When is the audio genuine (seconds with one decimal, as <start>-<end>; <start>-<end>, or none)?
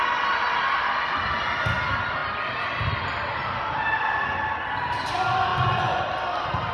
0.0-5.5; 6.0-6.7